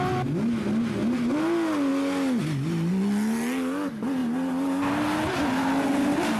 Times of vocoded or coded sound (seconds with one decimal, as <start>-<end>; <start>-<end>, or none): none